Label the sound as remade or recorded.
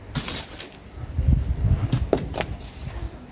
recorded